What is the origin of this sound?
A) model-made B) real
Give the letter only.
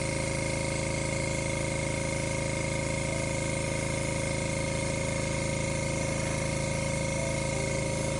B